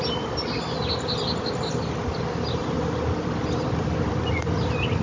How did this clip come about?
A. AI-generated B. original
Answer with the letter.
B